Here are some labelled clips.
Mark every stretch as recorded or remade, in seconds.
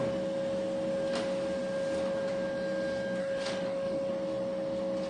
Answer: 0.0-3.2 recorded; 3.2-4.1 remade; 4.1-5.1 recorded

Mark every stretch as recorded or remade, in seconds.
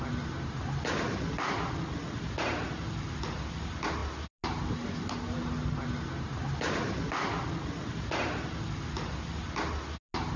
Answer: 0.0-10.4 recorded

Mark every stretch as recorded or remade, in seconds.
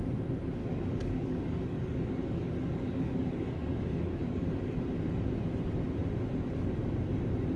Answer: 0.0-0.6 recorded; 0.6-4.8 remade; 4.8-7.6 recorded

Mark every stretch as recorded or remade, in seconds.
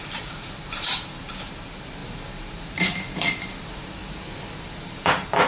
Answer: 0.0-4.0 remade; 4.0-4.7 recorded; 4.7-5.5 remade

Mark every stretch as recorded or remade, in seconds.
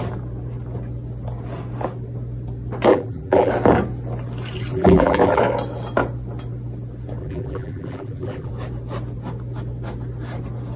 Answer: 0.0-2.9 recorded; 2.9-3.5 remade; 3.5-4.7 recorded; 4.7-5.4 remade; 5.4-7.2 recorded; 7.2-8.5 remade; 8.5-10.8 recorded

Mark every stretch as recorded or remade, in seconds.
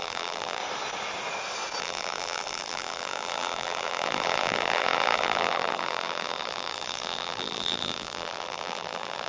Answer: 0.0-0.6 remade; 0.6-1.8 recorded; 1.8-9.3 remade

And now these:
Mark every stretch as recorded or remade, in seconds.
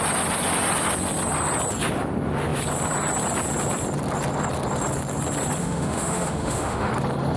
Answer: 0.0-5.6 recorded; 5.6-6.9 remade; 6.9-7.4 recorded